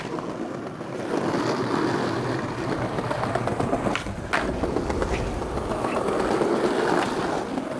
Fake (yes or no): no